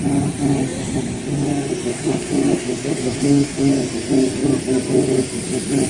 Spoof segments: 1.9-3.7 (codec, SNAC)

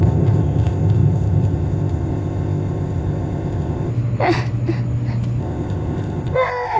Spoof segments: 0.0-3.9 (codec, ZipCodec); 5.4-6.8

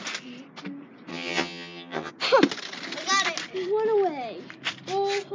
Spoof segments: 1.1-2.1 (vocoder, HiFi-GAN)

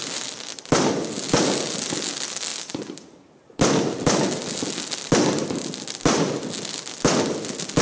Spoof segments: none

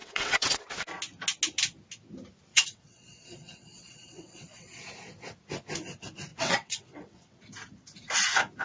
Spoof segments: 0.0-0.6 (vocoder, WaveNeXt); 2.5-4.8; 6.3-7.4

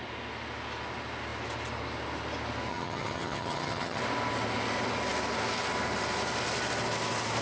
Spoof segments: 2.7-4.0 (vocoder, HiFi-GAN)

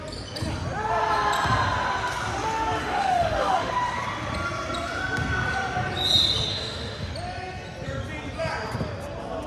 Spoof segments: 2.8-3.7 (autoencoder, DAC-VAE); 6.5-7.1